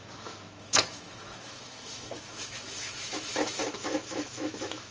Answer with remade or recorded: remade